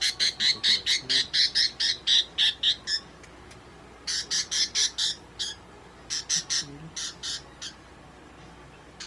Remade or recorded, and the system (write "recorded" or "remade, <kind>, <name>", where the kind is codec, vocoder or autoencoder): recorded